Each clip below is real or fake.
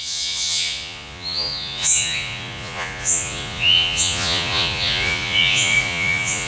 fake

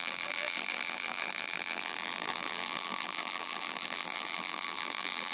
fake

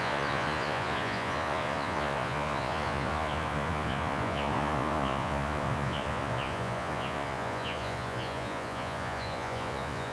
fake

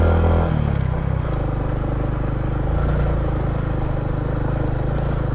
real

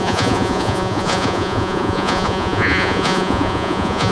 fake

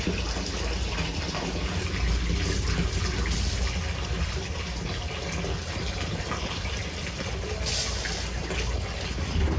real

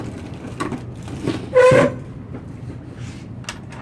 real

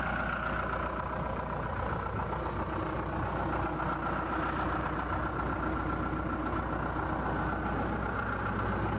real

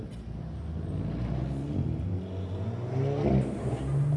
real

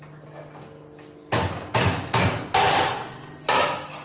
real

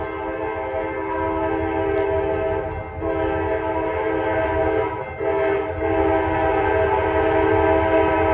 real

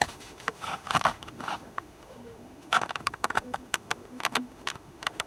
fake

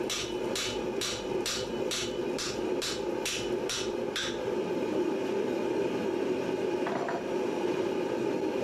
fake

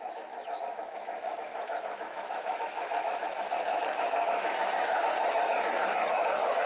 fake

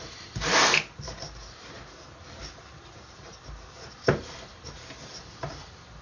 real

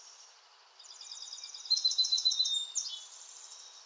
real